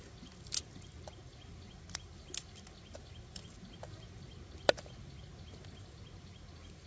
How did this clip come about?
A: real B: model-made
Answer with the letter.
A